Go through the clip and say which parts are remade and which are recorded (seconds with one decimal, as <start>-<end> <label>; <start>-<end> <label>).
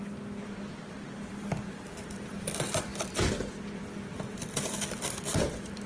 0.0-5.9 recorded